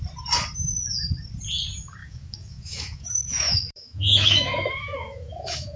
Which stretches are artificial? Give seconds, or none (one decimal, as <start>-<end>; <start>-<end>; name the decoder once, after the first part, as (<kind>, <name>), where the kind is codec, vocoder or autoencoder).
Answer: 2.0-5.8 (autoencoder, DAC-VAE)

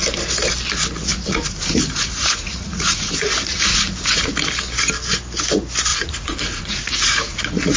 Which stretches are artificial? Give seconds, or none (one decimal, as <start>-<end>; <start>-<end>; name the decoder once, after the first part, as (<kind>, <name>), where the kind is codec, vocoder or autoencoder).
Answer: 1.1-4.3 (vocoder, Vocos); 5.9-7.8

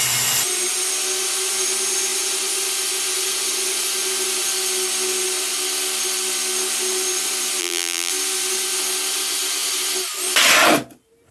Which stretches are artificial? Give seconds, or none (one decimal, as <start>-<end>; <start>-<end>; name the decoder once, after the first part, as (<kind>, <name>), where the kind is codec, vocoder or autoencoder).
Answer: 7.6-8.1 (vocoder, BigVGAN v2)

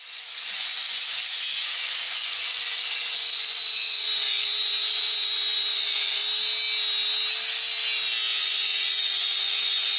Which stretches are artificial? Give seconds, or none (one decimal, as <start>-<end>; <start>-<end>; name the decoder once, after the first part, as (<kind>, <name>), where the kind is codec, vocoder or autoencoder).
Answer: 0.0-6.2 (vocoder, Vocos); 8.4-10.0

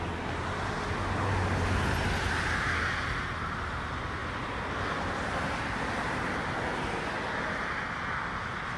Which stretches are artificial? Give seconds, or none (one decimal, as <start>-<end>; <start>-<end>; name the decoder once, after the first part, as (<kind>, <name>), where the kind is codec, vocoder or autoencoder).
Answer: none

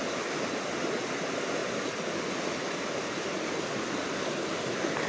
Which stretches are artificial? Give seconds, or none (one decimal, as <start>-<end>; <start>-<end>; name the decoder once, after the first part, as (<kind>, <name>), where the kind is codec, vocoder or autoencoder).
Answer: none